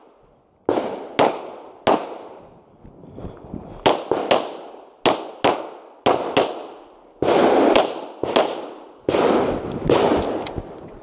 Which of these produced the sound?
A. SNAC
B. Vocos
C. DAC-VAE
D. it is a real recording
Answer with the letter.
D